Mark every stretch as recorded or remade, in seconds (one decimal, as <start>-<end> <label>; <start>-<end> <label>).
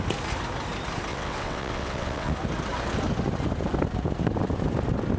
0.0-1.1 recorded; 1.1-2.3 remade; 2.3-5.2 recorded